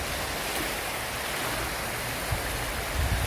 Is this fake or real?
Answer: real